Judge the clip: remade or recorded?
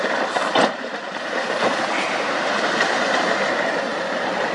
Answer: remade